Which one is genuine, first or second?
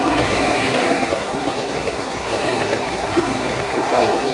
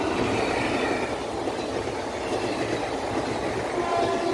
second